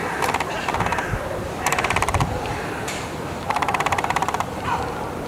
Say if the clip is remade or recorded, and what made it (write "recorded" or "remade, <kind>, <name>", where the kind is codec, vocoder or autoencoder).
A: remade, vocoder, BigVGAN v2